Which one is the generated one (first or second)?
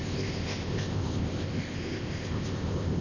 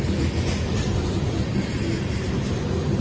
first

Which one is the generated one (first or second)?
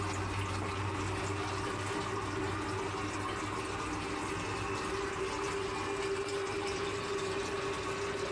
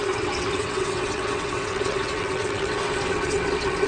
second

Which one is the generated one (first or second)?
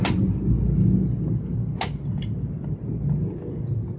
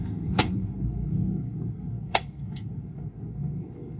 second